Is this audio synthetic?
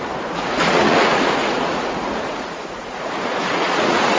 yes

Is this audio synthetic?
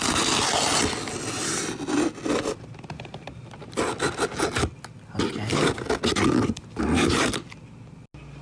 no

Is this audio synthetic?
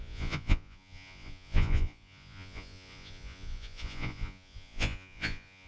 yes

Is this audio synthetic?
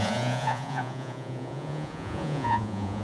yes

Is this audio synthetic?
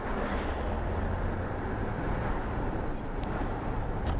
no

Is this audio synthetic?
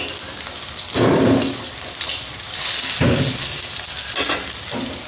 no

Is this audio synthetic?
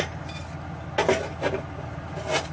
no